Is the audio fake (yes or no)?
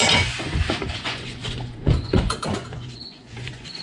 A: yes